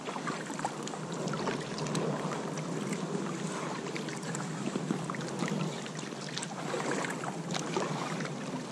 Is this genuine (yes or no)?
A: yes